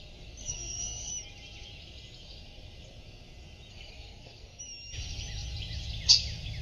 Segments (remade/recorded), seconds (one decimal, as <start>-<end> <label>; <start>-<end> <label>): 0.0-0.4 recorded; 0.4-1.1 remade; 1.1-3.7 recorded; 3.7-4.6 remade; 4.6-6.6 recorded